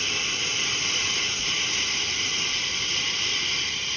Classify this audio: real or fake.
real